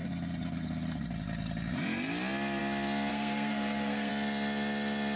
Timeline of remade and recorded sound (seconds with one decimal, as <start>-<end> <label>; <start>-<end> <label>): 0.0-3.1 recorded; 3.1-4.1 remade; 4.1-5.2 recorded